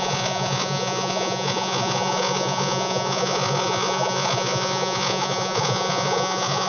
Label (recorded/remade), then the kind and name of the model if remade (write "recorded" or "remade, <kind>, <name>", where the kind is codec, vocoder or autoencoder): remade, vocoder, Vocos